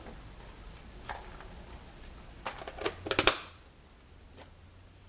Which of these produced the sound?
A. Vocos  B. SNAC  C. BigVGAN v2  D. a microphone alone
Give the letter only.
D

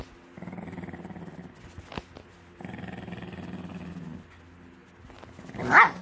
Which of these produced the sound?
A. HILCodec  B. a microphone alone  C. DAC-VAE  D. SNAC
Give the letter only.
B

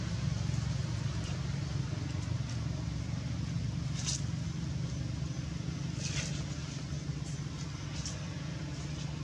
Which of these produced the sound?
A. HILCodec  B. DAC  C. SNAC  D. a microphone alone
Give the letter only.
D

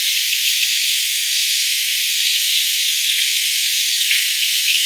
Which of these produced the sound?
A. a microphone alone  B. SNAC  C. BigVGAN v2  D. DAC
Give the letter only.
B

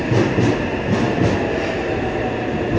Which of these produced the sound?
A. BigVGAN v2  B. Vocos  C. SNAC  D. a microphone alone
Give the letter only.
D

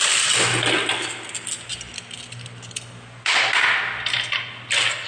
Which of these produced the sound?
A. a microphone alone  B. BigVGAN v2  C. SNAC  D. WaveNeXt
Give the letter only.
A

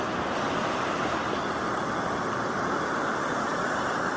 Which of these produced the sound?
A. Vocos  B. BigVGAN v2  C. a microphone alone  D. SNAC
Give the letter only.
C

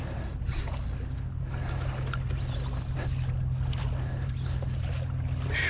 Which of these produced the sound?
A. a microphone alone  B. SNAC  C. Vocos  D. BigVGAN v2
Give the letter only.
A